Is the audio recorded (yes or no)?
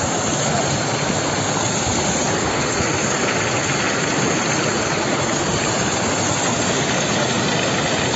yes